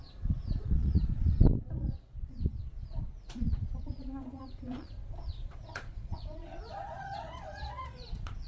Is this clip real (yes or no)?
no